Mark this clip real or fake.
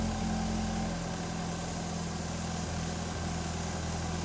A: real